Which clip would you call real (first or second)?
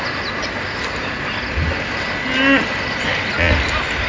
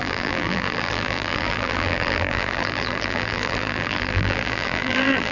first